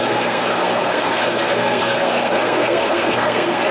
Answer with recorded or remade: remade